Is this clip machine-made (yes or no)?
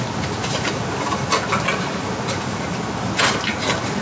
no